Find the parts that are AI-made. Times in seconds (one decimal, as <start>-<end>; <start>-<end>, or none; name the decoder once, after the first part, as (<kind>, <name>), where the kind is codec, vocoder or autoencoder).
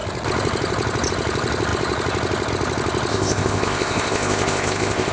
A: 3.1-5.1 (codec, ZipCodec)